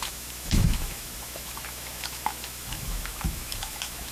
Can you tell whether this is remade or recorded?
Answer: remade